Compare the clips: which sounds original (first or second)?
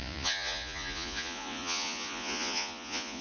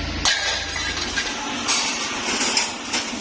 second